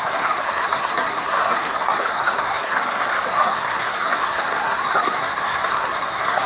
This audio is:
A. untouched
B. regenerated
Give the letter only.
B